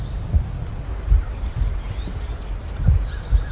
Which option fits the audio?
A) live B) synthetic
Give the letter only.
A